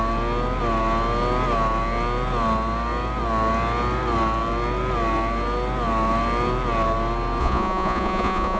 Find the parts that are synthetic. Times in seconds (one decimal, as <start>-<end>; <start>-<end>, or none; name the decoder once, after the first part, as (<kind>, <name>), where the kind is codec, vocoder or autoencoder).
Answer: 7.4-8.6 (vocoder, Vocos)